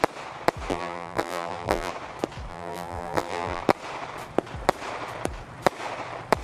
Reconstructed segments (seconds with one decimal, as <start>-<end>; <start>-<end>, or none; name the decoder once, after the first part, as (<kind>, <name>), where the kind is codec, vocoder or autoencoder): 0.7-1.9 (vocoder, BigVGAN v2); 2.5-3.6